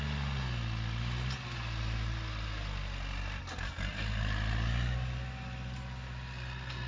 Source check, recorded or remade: recorded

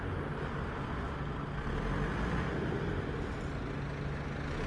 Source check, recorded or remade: recorded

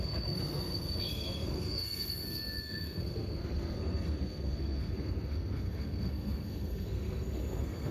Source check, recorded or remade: remade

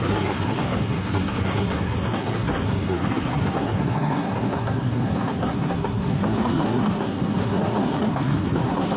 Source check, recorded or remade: remade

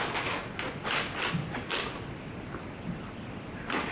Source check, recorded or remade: recorded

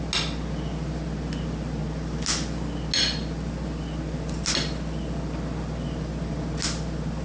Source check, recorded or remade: recorded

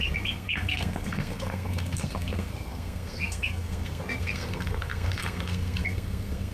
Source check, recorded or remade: remade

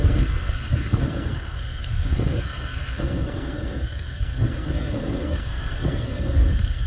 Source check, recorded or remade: remade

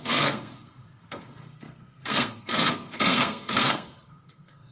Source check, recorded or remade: remade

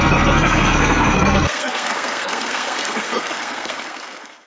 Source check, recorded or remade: remade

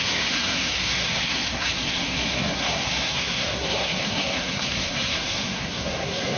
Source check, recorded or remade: remade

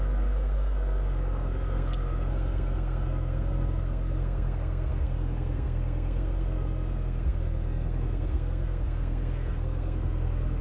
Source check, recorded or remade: remade